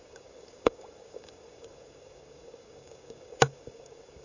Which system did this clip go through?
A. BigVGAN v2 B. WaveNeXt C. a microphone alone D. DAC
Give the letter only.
D